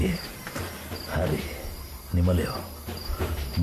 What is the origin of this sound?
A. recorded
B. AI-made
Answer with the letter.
B